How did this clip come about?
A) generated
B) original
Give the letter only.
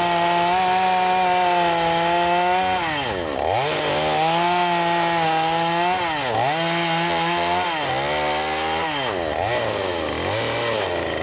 B